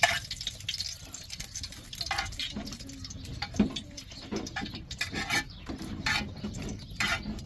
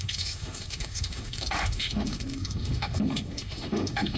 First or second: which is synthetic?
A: second